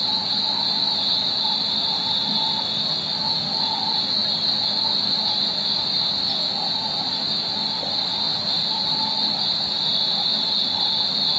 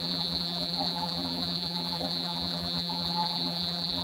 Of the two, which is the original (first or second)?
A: first